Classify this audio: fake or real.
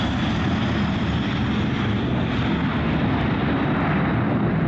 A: real